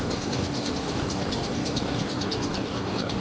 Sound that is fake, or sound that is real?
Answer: fake